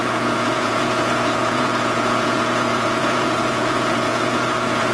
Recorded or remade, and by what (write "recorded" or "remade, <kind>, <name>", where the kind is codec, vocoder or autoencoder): remade, vocoder, Vocos